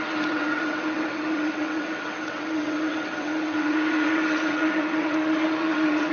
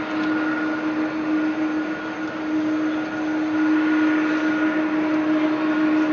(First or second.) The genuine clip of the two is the second